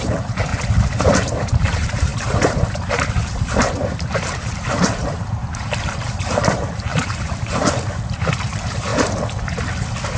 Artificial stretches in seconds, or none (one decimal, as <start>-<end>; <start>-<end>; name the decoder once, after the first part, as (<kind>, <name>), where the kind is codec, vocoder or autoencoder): 0.0-0.5 (vocoder, BigVGAN v2); 1.0-8.9